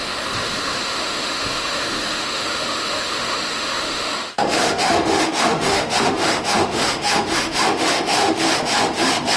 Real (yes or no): no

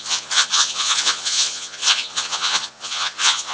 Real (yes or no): no